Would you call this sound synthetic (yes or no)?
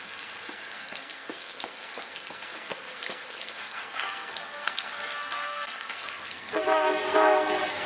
yes